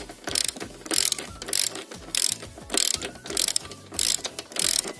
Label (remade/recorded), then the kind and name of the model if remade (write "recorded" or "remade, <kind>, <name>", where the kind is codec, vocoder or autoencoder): recorded